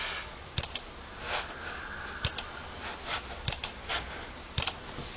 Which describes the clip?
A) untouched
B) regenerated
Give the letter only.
A